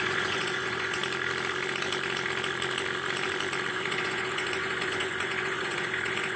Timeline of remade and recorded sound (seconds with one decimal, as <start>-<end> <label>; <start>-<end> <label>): 0.0-1.0 remade; 1.0-3.7 recorded; 3.7-6.4 remade